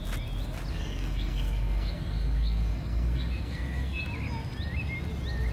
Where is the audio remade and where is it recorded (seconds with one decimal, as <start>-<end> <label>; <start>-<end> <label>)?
0.0-0.7 recorded; 0.7-4.0 remade; 4.0-5.5 recorded